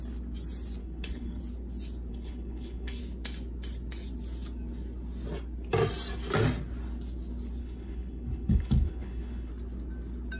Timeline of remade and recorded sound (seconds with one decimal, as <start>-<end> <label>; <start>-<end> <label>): 0.0-0.8 recorded; 0.8-1.4 remade; 1.4-2.1 recorded; 2.1-3.0 remade; 3.0-7.6 recorded; 7.6-9.5 remade; 9.5-10.4 recorded